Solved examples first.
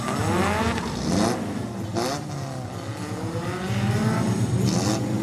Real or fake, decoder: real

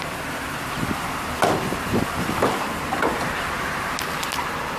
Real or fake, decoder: real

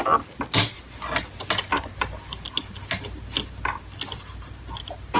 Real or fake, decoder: real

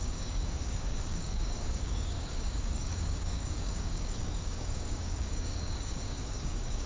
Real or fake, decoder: fake, codec, DAC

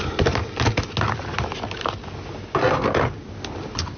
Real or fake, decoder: real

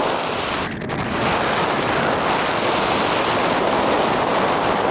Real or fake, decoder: real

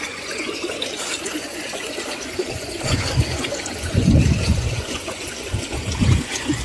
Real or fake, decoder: fake, vocoder, Vocos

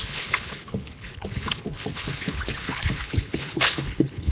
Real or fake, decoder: fake, codec, HILCodec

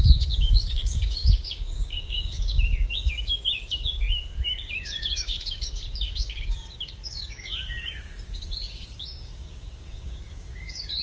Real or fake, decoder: fake, codec, DAC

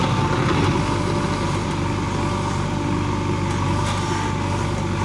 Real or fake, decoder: real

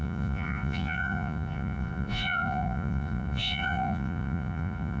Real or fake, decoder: fake, vocoder, Vocos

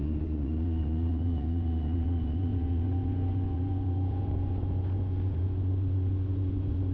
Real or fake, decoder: fake, vocoder, Vocos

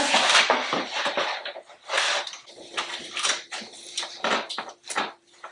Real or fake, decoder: fake, vocoder, BigVGAN v2